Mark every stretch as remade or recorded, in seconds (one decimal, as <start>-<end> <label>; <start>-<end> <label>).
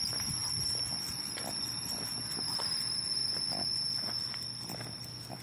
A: 0.0-5.4 recorded